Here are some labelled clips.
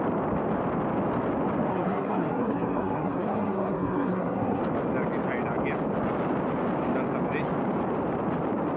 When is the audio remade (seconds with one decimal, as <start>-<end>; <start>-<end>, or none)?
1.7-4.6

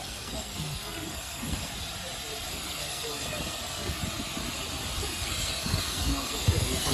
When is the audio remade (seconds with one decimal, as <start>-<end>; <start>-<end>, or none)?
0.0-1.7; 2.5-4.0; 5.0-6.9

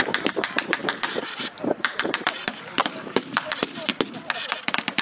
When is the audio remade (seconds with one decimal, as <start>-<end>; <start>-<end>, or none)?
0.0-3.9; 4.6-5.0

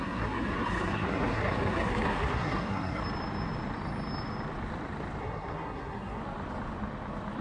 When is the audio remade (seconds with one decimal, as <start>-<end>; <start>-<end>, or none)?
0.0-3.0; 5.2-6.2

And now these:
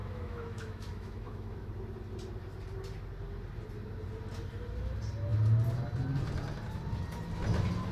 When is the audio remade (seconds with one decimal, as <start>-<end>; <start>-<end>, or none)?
0.0-1.7

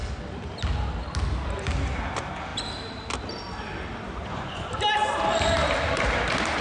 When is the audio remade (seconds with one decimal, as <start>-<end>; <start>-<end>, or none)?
4.2-4.7